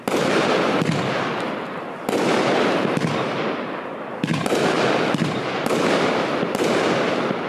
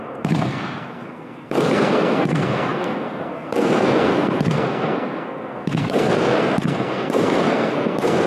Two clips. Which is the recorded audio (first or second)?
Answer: first